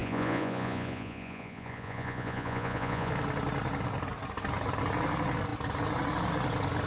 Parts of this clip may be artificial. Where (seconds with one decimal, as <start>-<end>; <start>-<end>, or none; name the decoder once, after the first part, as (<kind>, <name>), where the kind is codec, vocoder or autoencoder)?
0.0-3.1 (vocoder, Vocos)